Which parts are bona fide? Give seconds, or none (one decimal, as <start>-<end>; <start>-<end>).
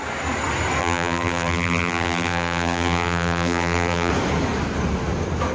0.0-0.8; 4.1-5.5